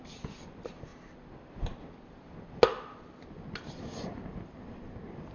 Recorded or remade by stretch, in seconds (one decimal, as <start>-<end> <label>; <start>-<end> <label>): 0.0-5.3 recorded

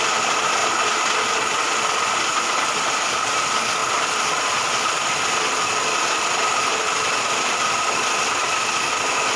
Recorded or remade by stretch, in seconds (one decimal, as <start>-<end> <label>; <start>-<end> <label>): 0.0-0.6 remade; 0.6-1.7 recorded; 1.7-9.4 remade

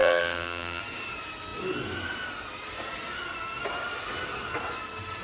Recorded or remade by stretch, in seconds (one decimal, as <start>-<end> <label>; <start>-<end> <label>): 0.0-0.8 remade; 0.8-5.2 recorded

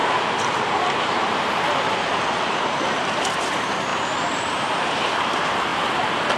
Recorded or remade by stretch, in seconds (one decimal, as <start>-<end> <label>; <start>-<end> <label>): 0.0-5.7 remade; 5.7-6.4 recorded

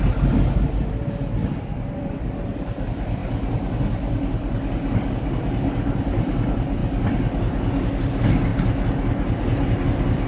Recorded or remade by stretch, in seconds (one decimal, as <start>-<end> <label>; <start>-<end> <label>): 0.0-1.4 recorded; 1.4-2.2 remade; 2.2-10.3 recorded

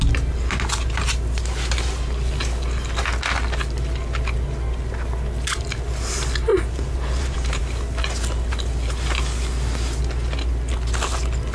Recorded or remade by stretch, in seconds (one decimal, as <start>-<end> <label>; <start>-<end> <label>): 0.0-6.5 recorded; 6.5-7.6 remade; 7.6-11.5 recorded

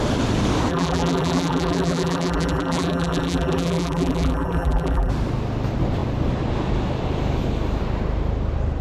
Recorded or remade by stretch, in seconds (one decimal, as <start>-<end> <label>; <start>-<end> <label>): 0.0-0.7 recorded; 0.7-5.1 remade; 5.1-8.8 recorded